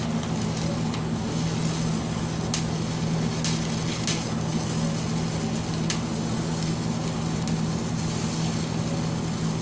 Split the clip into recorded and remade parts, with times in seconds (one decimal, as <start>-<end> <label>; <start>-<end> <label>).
0.0-9.6 recorded